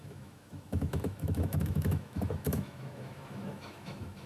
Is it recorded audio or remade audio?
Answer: remade